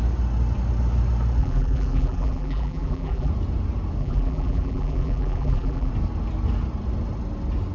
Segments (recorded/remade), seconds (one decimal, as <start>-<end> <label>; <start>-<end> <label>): 0.0-1.4 recorded; 1.4-3.3 remade; 3.3-4.0 recorded; 4.0-5.9 remade; 5.9-7.7 recorded